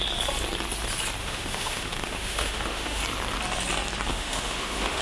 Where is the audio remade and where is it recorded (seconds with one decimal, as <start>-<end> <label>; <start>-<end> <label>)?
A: 0.0-1.2 recorded; 1.2-3.0 remade; 3.0-4.1 recorded; 4.1-5.0 remade